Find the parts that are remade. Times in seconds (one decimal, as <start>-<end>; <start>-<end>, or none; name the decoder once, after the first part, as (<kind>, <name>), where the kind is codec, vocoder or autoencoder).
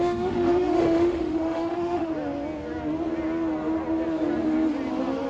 0.0-2.1 (autoencoder, DAC-VAE)